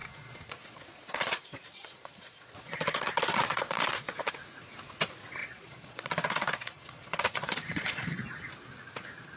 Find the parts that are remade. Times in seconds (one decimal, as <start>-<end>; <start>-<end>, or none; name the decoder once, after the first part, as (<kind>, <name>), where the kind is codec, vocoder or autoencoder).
0.0-4.3 (vocoder, Vocos); 5.4-8.5